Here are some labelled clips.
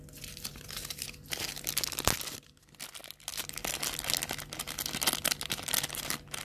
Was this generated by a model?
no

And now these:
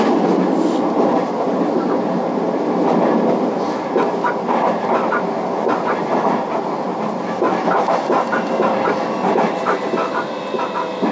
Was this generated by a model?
no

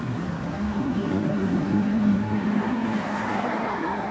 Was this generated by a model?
yes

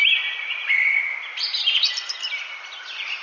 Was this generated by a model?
no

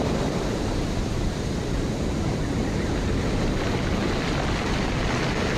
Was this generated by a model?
no